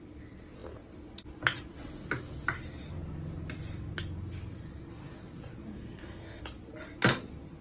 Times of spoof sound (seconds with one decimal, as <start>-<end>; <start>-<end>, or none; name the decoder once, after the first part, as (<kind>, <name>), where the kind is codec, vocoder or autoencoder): 5.7-6.4 (codec, SNAC)